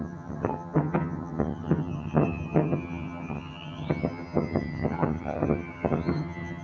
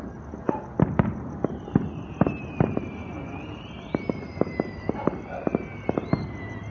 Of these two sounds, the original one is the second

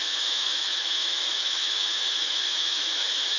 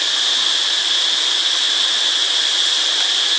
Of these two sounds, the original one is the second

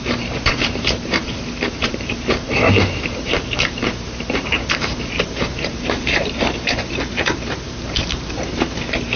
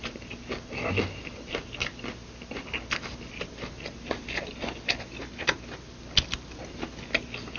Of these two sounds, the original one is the second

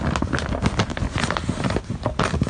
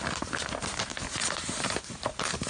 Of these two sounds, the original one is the first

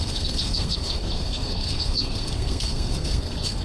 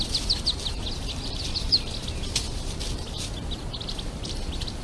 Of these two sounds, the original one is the second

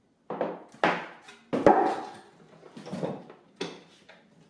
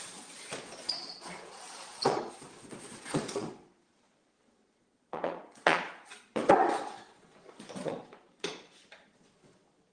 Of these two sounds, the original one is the first